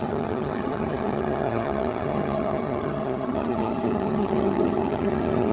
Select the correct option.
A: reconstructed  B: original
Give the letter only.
A